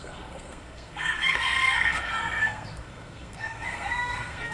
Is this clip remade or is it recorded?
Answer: remade